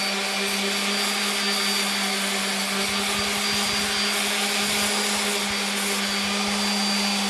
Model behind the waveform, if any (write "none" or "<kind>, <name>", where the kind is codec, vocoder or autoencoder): none